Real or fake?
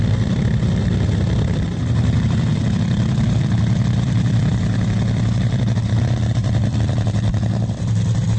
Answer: fake